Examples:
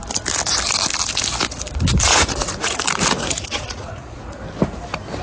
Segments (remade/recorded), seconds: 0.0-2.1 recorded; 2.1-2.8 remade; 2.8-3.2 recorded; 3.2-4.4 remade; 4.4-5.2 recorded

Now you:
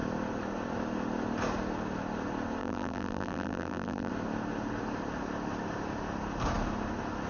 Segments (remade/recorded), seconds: 0.0-2.6 recorded; 2.6-4.1 remade; 4.1-7.3 recorded

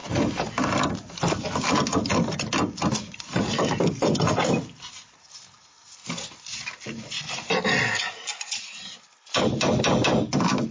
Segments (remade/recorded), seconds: 0.0-10.7 recorded

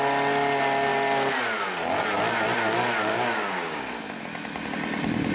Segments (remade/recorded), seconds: 0.0-3.1 recorded; 3.1-3.8 remade; 3.8-5.3 recorded

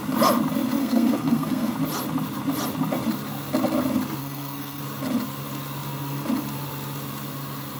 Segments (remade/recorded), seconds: 0.0-0.8 recorded; 0.8-1.7 remade; 1.7-4.2 recorded; 4.2-4.8 remade; 4.8-7.8 recorded

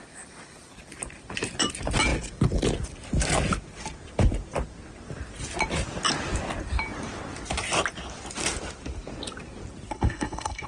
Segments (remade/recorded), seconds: 0.0-9.9 recorded; 9.9-10.7 remade

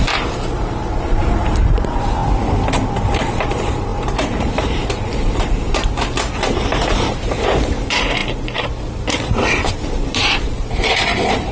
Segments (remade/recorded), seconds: 0.0-2.2 remade; 2.2-2.9 recorded; 2.9-11.5 remade